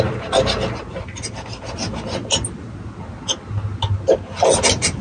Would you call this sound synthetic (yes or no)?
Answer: no